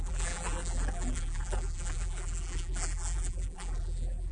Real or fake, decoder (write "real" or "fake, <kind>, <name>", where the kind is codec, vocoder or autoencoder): fake, vocoder, BigVGAN v2